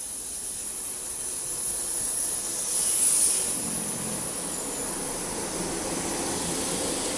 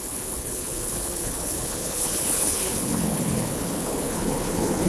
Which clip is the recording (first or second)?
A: first